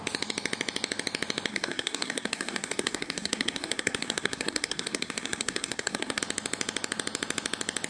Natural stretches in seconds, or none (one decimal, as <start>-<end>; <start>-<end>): 0.0-1.5; 6.2-7.9